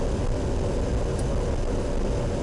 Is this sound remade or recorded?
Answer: recorded